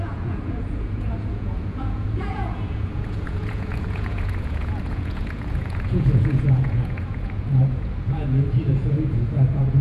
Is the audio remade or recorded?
remade